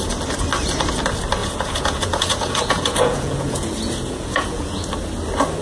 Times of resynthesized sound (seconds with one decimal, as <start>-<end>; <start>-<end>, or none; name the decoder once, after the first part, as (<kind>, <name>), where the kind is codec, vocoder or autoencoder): 1.4-4.8 (vocoder, Vocos)